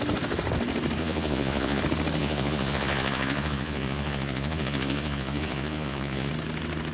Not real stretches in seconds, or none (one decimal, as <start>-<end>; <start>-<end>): 1.0-1.8; 2.2-6.3

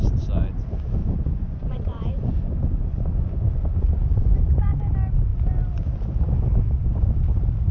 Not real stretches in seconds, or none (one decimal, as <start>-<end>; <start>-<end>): 1.0-4.8

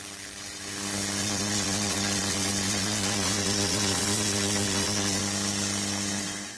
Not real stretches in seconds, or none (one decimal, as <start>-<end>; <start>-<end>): 1.2-5.2

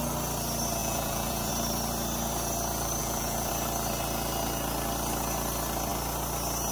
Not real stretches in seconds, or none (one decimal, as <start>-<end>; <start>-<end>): 0.8-1.5; 3.0-3.5

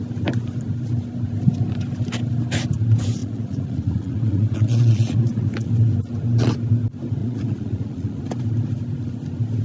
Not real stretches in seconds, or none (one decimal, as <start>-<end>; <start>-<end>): 3.2-5.7; 7.2-8.2